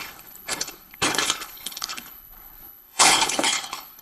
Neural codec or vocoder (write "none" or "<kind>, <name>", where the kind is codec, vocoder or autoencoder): codec, HILCodec